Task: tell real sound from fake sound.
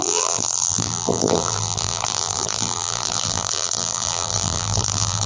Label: fake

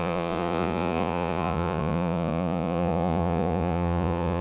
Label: fake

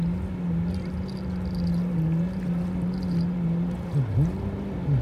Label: real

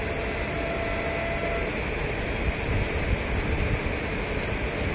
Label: real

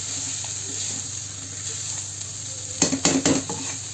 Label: real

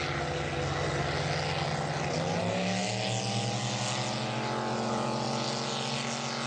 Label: real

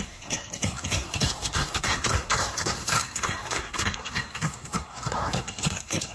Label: fake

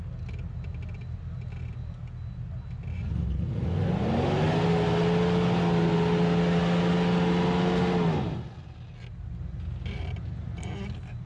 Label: real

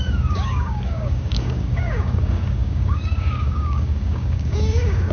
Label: fake